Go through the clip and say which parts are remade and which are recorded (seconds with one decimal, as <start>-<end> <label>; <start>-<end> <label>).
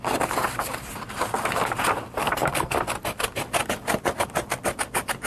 0.0-2.2 recorded; 2.2-2.8 remade; 2.8-5.3 recorded